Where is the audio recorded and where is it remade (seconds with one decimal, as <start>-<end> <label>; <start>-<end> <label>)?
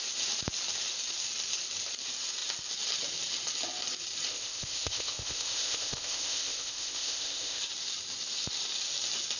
0.0-4.3 recorded; 4.3-7.6 remade; 7.6-9.4 recorded